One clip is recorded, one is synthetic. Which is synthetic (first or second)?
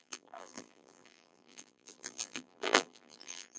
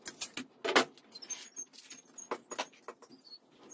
first